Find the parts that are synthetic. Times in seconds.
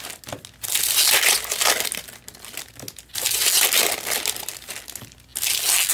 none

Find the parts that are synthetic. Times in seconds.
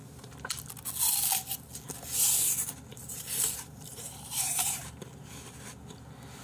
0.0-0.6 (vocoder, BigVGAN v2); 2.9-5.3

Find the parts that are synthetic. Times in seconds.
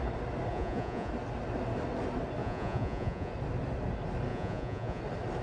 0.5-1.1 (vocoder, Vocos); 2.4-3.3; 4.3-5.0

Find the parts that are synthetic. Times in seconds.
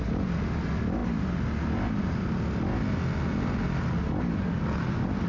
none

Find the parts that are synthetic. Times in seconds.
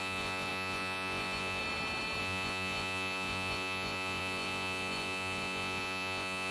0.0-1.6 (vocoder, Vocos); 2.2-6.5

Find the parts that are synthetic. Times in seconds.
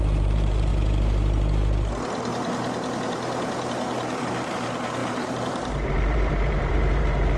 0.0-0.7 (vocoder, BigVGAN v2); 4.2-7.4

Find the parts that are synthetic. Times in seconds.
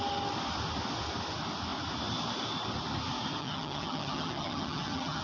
3.4-5.2 (vocoder, HiFi-GAN)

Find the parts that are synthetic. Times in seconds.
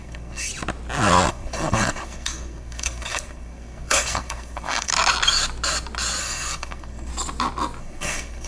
0.0-0.5 (codec, SNAC); 1.3-4.9; 6.2-7.1; 7.8-8.5